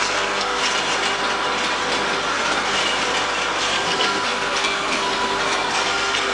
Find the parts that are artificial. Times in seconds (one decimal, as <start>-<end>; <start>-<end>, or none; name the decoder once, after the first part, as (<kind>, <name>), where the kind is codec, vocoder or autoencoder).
0.0-0.6 (codec, SNAC); 2.3-2.8; 3.6-6.3